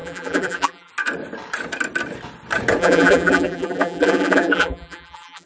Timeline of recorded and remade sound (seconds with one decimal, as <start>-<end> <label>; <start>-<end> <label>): 0.0-0.9 remade; 0.9-2.8 recorded; 2.8-5.5 remade